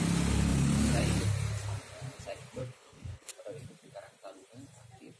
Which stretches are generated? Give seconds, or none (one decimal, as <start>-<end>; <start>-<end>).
2.6-3.3